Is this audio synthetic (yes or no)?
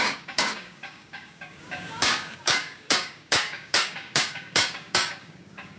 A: yes